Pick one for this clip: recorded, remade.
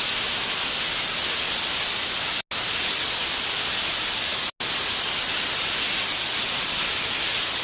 recorded